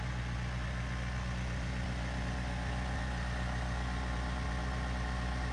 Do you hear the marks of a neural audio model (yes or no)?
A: no